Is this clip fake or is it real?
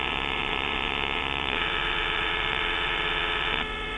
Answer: fake